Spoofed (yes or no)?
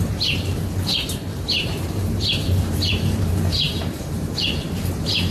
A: yes